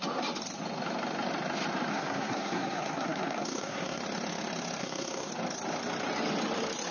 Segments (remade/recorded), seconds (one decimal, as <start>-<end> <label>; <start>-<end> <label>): 0.0-1.9 recorded; 1.9-4.0 remade; 4.0-4.8 recorded; 4.8-5.3 remade; 5.3-6.9 recorded